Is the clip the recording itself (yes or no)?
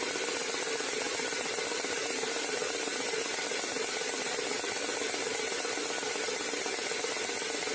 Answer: yes